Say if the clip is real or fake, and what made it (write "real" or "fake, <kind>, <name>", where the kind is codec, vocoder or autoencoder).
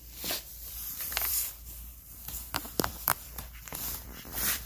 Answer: fake, vocoder, BigVGAN v2